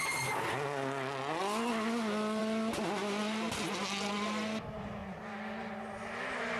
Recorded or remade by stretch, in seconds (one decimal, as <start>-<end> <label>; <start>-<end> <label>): 0.0-6.6 recorded